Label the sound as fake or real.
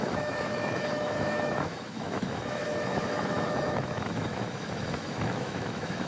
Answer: fake